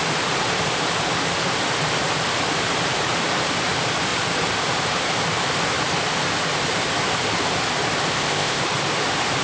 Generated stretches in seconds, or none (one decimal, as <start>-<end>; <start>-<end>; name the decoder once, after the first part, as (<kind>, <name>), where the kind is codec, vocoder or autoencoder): 8.1-8.6 (codec, ZipCodec)